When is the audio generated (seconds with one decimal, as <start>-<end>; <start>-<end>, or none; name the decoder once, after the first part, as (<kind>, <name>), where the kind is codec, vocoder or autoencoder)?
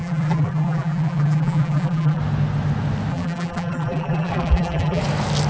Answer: 0.0-2.2 (vocoder, BigVGAN v2); 3.1-5.0